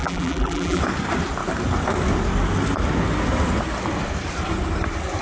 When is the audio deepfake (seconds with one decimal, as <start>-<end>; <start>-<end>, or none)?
0.0-0.8